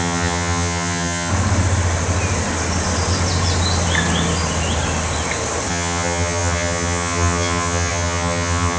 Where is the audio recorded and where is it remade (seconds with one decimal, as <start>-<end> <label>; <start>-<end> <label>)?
0.0-1.3 remade; 1.3-5.7 recorded; 5.7-8.8 remade